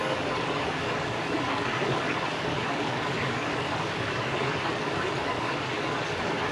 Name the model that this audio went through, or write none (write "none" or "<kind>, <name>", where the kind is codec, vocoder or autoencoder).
codec, DAC